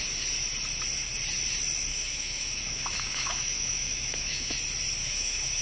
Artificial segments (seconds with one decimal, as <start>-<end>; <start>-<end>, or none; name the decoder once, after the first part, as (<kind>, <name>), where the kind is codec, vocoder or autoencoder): 1.9-4.5 (autoencoder, DAC-VAE); 5.0-5.6